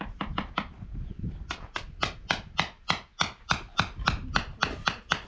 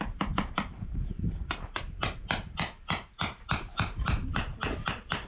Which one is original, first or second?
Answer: first